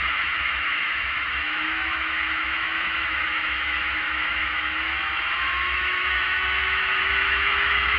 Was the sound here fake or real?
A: fake